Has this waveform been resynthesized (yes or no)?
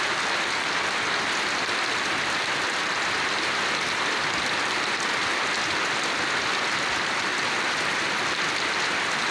no